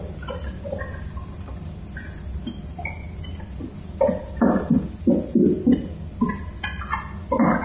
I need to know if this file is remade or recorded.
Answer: recorded